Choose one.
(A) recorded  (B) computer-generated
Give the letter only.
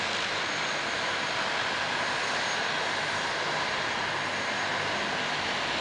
A